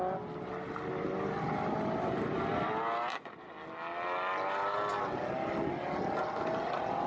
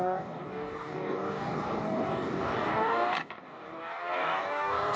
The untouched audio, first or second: first